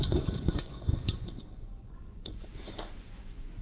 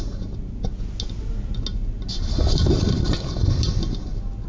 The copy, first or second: first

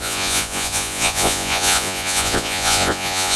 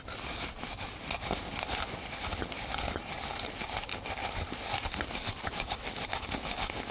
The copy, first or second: first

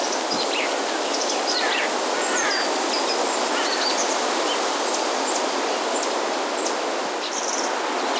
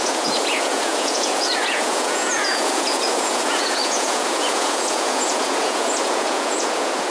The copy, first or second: second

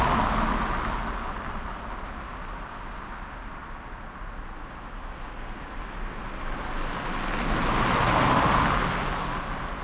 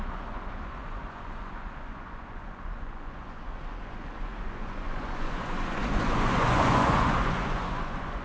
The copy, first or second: second